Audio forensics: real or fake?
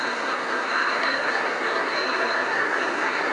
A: fake